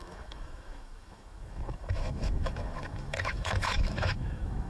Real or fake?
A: fake